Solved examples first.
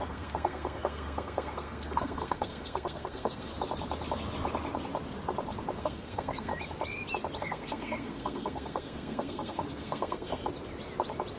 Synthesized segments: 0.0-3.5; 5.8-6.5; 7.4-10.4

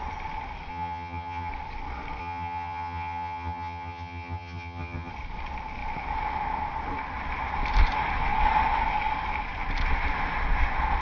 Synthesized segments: 0.7-1.5; 2.2-5.1

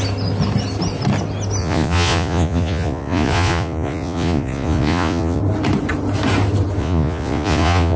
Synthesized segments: 1.6-5.4; 6.8-8.0

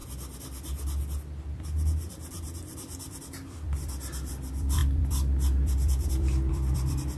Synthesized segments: 1.5-7.2